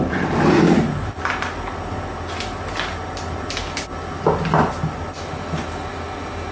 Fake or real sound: real